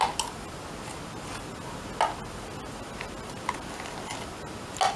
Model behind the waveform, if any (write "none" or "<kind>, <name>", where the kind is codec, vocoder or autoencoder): none